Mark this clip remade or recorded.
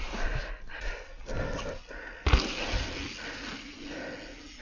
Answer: recorded